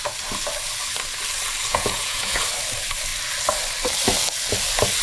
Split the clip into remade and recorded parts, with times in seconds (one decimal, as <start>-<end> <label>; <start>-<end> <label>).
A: 0.0-1.7 recorded; 1.7-2.4 remade; 2.4-5.0 recorded